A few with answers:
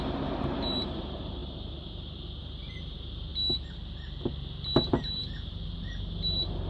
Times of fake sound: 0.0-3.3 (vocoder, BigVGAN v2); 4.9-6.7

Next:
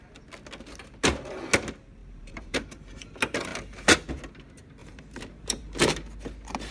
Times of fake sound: 2.0-3.1 (vocoder, BigVGAN v2); 4.8-5.8